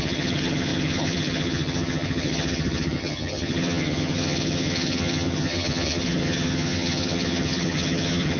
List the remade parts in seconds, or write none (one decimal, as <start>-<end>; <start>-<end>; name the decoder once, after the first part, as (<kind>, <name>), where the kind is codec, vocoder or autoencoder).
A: 0.0-8.4 (vocoder, HiFi-GAN)